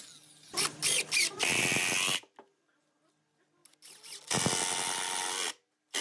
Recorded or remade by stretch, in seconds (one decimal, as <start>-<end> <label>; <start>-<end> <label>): 0.0-6.0 recorded